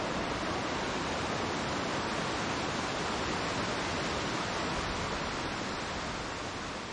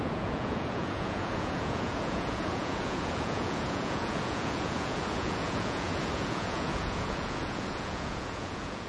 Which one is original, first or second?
first